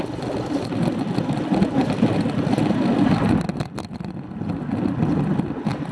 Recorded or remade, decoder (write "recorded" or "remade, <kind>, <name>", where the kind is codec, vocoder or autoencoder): recorded